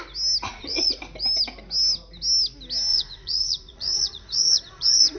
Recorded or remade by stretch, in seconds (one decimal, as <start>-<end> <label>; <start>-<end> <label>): 0.0-0.5 recorded; 0.5-1.0 remade; 1.0-2.9 recorded; 2.9-5.2 remade